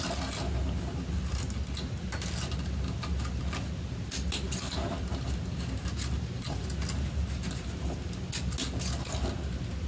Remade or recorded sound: recorded